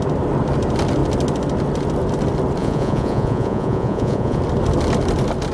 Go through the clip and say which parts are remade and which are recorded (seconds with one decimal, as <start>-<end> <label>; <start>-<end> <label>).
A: 0.0-2.6 recorded; 2.6-4.4 remade; 4.4-5.5 recorded